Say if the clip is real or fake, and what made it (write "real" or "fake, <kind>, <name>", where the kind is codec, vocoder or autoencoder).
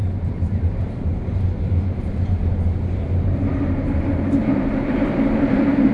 fake, vocoder, BigVGAN v2